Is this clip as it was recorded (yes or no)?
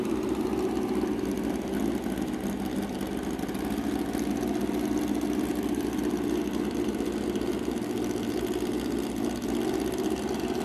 yes